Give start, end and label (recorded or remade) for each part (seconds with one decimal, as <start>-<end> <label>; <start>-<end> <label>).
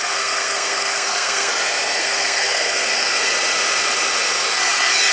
0.0-1.5 remade; 1.5-2.0 recorded; 2.0-3.3 remade; 3.3-5.1 recorded